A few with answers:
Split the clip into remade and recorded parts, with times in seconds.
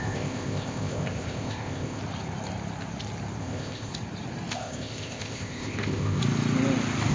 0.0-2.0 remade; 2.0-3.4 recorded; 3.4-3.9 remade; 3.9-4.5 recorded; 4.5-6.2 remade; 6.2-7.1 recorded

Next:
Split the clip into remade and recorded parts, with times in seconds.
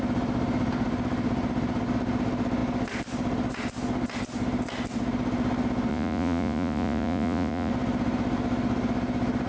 0.0-5.9 recorded; 5.9-7.7 remade; 7.7-9.5 recorded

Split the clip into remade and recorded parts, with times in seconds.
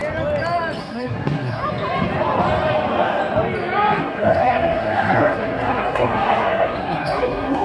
0.0-0.8 recorded; 0.8-1.6 remade; 1.6-4.0 recorded; 4.0-7.6 remade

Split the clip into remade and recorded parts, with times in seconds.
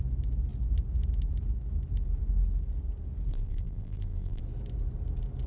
0.0-3.3 recorded; 3.3-4.4 remade; 4.4-5.5 recorded